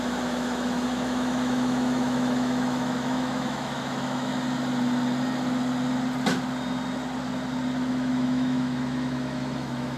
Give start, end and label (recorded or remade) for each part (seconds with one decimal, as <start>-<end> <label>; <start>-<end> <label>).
0.0-4.3 remade; 4.3-7.9 recorded; 7.9-10.0 remade